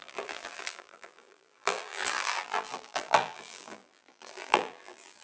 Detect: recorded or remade remade